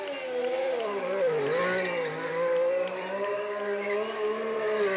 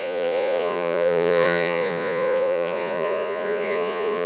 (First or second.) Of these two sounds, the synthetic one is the second